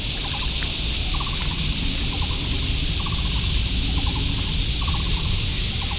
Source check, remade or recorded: recorded